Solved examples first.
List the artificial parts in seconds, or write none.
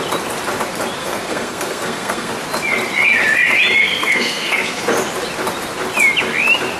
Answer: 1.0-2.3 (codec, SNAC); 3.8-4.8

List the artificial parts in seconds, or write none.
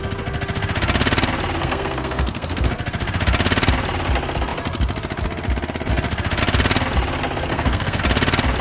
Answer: 1.6-2.7 (codec, SNAC); 7.5-8.0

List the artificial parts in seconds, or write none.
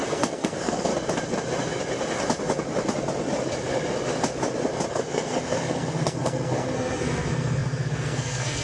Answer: 0.0-0.9 (codec, SNAC); 4.9-8.6